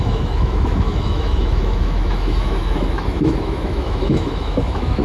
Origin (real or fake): fake